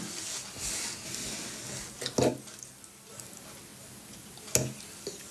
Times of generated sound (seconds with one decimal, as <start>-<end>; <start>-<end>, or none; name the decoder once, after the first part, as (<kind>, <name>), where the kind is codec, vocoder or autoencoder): none